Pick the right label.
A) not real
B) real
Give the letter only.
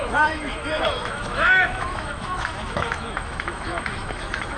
A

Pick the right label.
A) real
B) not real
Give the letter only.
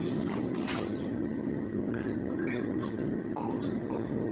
B